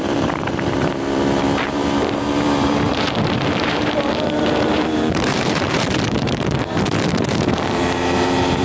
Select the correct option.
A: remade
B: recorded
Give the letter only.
A